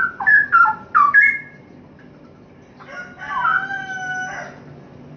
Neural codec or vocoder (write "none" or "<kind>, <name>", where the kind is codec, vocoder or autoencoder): none